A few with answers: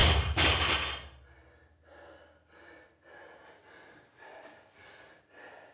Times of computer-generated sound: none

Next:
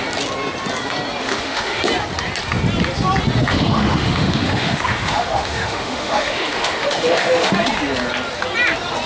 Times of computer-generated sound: 1.2-1.8; 3.5-7.5

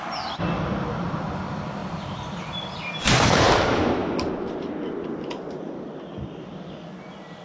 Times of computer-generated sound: 1.8-2.9

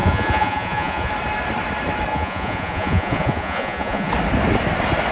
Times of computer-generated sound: 0.0-1.1; 2.1-4.1

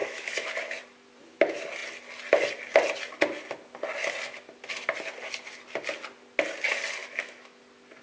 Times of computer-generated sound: 0.0-0.5; 7.0-7.6

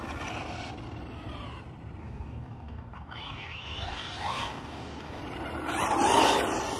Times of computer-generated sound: 2.0-5.2